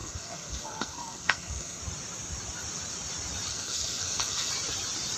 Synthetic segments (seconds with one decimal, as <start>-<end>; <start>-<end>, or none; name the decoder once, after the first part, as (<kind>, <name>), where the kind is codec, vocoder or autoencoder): 0.0-1.8 (codec, SNAC); 3.5-4.5